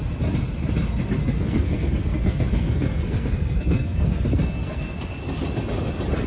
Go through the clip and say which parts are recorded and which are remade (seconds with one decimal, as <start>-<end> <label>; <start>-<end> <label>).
0.0-1.2 recorded; 1.2-5.0 remade; 5.0-6.3 recorded